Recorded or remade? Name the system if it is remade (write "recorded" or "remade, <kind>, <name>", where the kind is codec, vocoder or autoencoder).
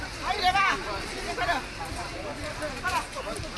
recorded